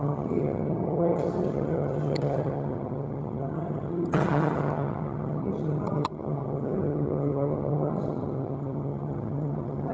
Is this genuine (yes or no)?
no